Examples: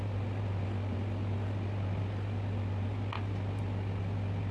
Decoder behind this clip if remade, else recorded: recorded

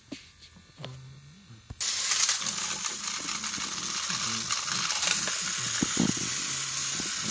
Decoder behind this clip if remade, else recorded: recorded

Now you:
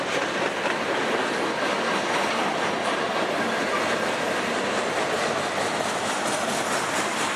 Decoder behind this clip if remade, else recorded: recorded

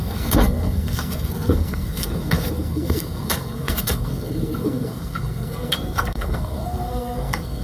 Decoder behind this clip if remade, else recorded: remade, codec, SNAC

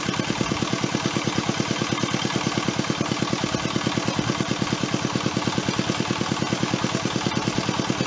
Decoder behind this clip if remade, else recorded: recorded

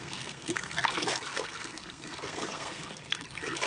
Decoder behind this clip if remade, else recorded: remade, codec, SNAC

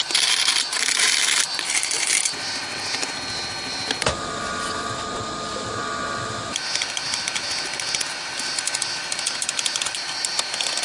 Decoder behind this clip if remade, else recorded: recorded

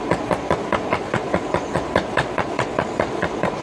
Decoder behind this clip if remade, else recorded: remade, vocoder, Vocos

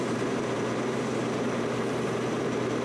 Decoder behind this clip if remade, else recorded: remade, vocoder, BigVGAN v2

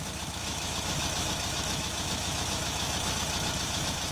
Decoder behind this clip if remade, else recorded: remade, autoencoder, DAC-VAE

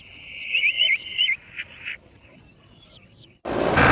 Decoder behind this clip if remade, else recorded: recorded